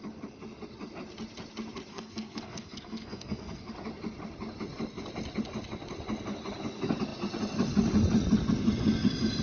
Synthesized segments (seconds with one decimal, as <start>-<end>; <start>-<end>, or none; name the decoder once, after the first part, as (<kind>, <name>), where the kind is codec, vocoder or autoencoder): 1.9-3.7 (codec, SNAC)